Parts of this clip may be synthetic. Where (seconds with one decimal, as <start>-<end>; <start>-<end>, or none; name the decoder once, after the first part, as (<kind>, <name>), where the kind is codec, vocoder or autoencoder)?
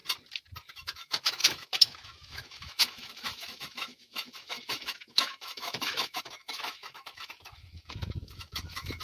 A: 0.7-9.0 (autoencoder, DAC-VAE)